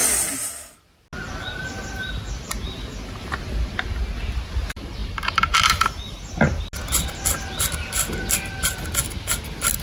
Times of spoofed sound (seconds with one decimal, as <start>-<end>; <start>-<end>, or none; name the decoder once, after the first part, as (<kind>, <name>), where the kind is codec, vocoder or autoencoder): 5.0-5.9 (vocoder, BigVGAN v2)